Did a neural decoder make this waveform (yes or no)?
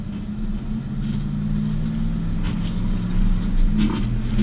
no